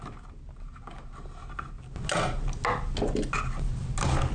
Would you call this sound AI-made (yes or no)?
no